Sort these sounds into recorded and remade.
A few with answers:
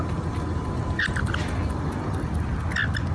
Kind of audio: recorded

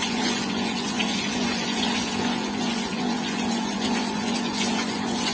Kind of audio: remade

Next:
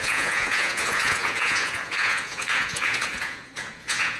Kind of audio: remade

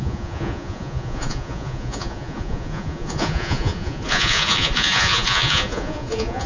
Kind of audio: remade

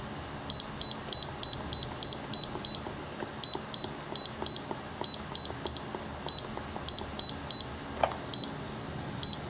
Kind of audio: recorded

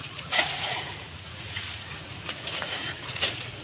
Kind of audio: remade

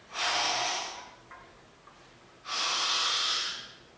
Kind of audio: recorded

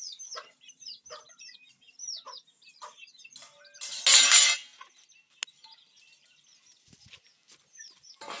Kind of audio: recorded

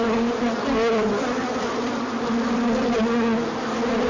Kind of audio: recorded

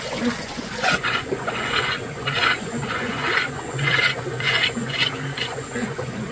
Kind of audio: remade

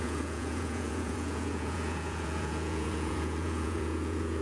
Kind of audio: remade